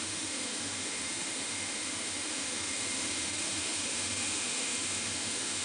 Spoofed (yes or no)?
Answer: yes